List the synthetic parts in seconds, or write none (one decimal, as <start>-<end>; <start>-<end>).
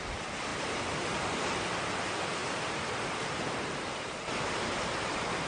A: 0.5-1.6; 2.4-5.5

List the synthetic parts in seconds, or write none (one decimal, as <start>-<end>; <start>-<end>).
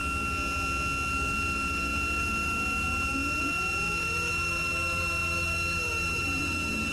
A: 1.1-6.9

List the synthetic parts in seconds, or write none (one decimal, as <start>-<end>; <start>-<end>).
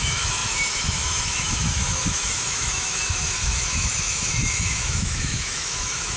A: 0.0-6.2